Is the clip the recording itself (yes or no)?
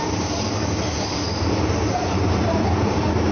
no